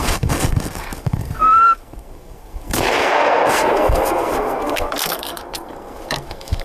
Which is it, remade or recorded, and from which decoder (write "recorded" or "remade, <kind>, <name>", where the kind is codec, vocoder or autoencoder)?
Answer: remade, codec, SNAC